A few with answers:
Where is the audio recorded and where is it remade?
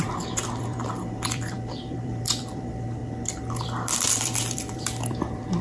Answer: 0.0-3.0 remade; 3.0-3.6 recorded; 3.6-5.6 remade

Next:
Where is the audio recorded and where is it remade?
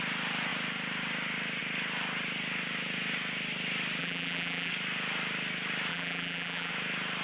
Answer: 0.0-4.0 recorded; 4.0-4.7 remade; 4.7-5.9 recorded; 5.9-6.7 remade; 6.7-7.2 recorded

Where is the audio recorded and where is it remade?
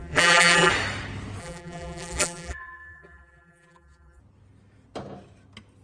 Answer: 0.0-0.7 remade; 0.7-1.4 recorded; 1.4-4.2 remade; 4.2-5.8 recorded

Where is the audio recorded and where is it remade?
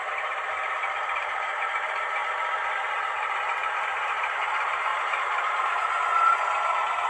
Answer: 0.0-2.2 remade; 2.2-3.0 recorded; 3.0-7.1 remade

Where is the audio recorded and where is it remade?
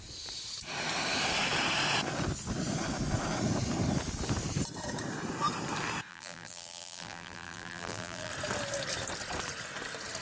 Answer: 0.0-6.1 recorded; 6.1-8.3 remade; 8.3-10.2 recorded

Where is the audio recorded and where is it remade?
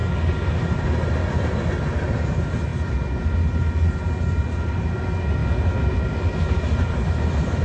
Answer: 0.0-7.6 recorded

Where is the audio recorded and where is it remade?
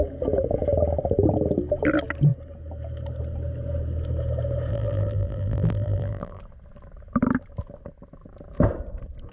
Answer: 0.0-4.7 recorded; 4.7-6.4 remade; 6.4-9.3 recorded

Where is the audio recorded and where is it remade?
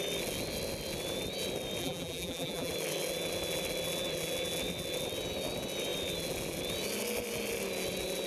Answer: 0.0-1.8 recorded; 1.8-2.7 remade; 2.7-8.3 recorded